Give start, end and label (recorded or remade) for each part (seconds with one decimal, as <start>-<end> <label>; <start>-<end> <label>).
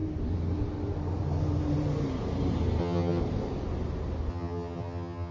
0.0-2.8 recorded; 2.8-3.2 remade; 3.2-4.3 recorded; 4.3-5.3 remade